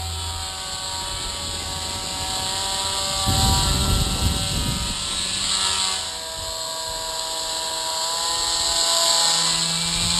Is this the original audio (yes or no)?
yes